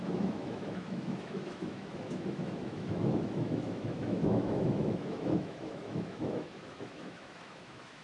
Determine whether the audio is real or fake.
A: fake